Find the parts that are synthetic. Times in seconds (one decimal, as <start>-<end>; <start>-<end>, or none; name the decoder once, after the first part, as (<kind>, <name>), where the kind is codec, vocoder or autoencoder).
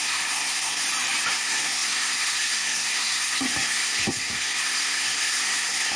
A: 0.0-0.8 (codec, SNAC); 1.3-6.0